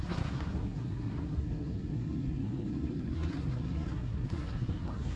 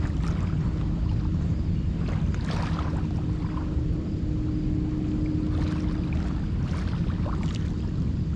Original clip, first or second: second